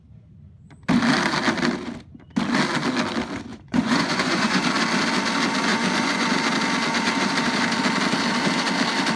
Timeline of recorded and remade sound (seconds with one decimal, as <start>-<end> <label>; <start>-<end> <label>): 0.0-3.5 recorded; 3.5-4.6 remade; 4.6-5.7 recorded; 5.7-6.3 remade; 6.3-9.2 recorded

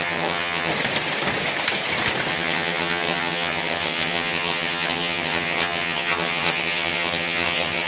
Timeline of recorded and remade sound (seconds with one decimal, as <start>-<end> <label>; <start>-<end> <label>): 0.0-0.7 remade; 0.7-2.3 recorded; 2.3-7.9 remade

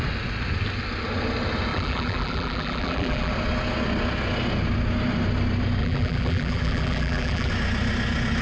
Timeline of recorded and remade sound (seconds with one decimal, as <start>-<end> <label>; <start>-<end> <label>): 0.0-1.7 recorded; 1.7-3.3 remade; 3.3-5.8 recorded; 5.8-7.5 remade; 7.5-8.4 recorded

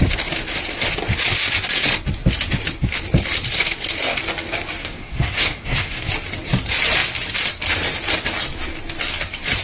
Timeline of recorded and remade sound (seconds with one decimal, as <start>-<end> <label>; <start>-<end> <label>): 0.0-4.8 recorded; 4.8-6.1 remade; 6.1-9.6 recorded

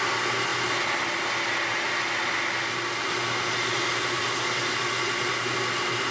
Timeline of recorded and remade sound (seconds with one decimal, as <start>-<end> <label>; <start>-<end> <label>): 0.0-6.1 recorded